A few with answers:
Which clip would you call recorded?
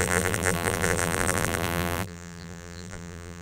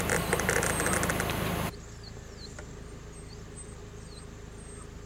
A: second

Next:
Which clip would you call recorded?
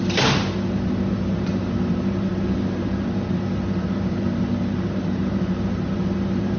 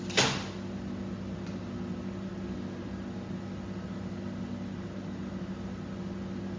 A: second